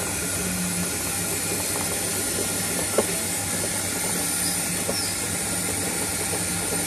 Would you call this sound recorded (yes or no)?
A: yes